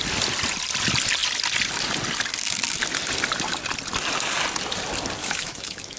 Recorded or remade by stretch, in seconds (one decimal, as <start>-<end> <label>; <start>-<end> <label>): 0.0-5.2 recorded; 5.2-6.0 remade